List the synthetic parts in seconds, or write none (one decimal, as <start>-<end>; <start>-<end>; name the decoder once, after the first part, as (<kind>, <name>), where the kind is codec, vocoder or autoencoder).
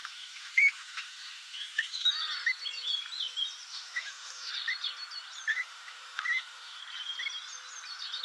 0.0-2.1 (autoencoder, DAC-VAE); 3.7-4.5; 5.5-6.8